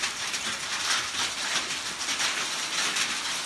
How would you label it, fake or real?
real